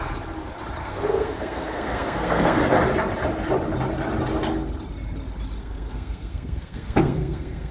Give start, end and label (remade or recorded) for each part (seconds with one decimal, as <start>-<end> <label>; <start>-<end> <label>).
0.0-0.8 recorded; 0.8-2.6 remade; 2.6-5.6 recorded; 5.6-7.7 remade